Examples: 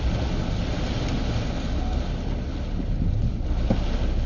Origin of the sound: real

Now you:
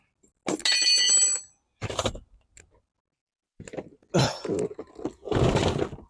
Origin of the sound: real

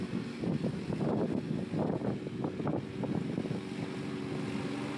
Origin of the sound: real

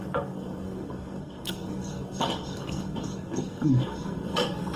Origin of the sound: fake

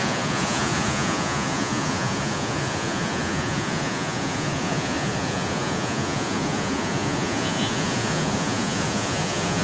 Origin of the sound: fake